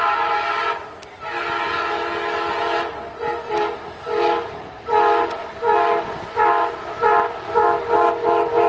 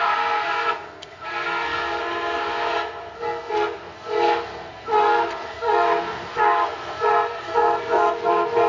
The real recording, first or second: first